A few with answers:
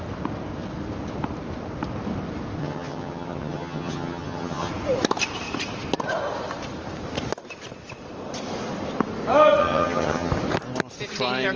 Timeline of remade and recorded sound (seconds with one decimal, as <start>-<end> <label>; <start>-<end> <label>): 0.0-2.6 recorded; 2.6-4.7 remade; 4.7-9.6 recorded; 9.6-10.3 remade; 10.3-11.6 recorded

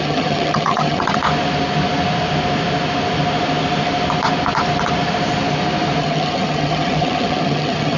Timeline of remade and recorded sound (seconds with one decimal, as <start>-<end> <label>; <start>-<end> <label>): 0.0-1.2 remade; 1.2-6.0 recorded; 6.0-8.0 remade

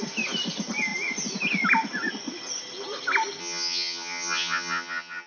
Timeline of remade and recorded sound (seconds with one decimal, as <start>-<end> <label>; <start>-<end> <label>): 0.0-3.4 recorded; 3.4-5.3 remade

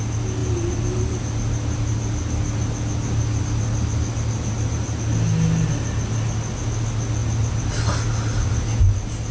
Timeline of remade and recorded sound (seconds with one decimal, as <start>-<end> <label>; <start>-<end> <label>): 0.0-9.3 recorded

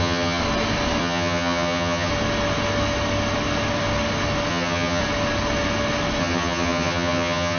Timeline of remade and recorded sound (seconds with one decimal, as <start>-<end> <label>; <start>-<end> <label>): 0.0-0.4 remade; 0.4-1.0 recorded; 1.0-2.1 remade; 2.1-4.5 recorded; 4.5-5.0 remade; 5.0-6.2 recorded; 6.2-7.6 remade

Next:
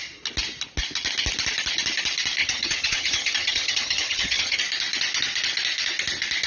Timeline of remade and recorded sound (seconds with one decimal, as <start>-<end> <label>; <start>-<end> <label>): 0.0-2.4 recorded; 2.4-4.6 remade; 4.6-6.5 recorded

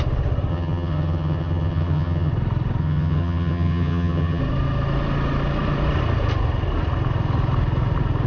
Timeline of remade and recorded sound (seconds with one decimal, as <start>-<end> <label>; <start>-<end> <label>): 0.0-0.5 recorded; 0.5-2.3 remade; 2.3-2.8 recorded; 2.8-4.4 remade; 4.4-8.3 recorded

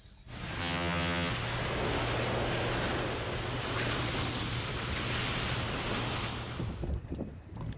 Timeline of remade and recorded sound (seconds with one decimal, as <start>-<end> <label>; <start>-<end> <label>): 0.0-0.6 recorded; 0.6-1.3 remade; 1.3-7.8 recorded